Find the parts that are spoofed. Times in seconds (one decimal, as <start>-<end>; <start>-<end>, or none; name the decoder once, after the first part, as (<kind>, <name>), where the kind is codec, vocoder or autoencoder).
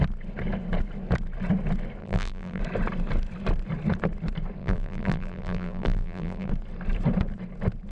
2.0-2.6 (vocoder, BigVGAN v2); 4.6-6.5